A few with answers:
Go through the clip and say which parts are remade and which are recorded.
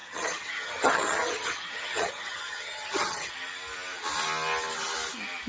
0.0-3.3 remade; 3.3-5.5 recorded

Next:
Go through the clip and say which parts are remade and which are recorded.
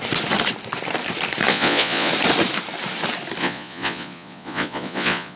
0.0-1.5 recorded; 1.5-2.1 remade; 2.1-3.4 recorded; 3.4-5.4 remade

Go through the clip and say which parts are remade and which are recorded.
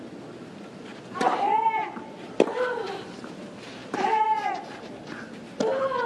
0.0-6.1 recorded